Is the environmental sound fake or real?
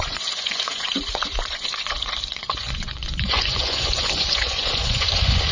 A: fake